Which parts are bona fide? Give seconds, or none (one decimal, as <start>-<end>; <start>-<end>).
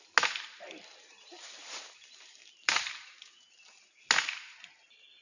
0.0-0.9; 4.0-5.2